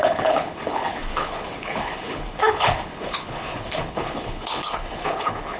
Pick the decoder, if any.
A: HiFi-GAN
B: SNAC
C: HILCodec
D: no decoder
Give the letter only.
C